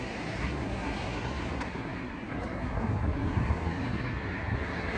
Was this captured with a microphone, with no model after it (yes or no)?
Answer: no